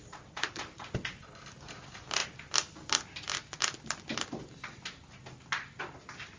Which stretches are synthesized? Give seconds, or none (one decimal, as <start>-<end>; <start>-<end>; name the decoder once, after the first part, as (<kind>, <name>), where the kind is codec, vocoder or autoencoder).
none